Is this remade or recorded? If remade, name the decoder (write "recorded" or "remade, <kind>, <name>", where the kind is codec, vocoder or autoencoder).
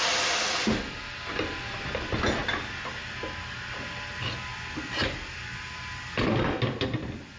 recorded